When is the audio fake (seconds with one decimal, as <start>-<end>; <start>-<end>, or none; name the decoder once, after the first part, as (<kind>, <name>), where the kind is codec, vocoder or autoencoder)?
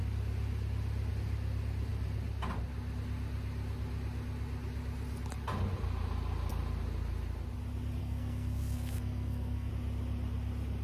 8.0-9.7 (codec, SNAC)